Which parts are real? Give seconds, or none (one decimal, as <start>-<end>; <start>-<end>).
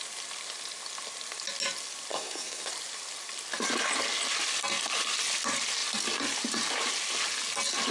0.0-2.1; 2.7-7.9